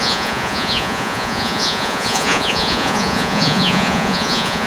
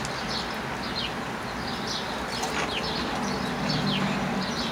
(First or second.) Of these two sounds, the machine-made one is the first